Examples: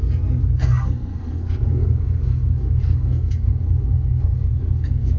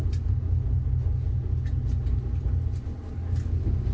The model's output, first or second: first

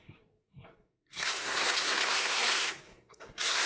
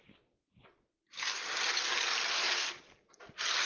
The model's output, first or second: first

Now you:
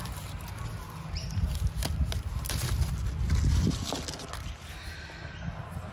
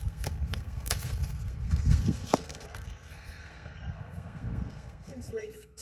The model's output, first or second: second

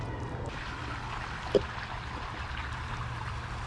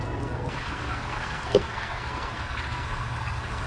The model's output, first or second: second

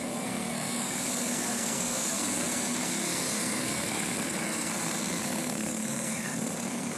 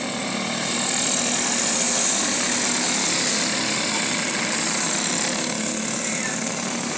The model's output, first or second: first